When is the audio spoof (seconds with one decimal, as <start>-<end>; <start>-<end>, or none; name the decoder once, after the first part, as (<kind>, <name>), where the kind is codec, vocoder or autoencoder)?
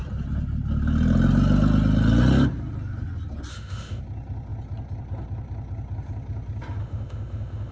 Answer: 3.5-4.0 (autoencoder, DAC-VAE); 6.8-7.7